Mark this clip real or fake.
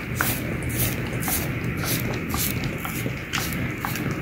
real